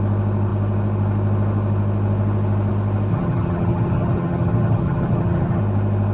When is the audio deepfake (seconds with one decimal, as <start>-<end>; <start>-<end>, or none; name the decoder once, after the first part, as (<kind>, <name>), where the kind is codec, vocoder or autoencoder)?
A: 3.1-5.6 (vocoder, HiFi-GAN)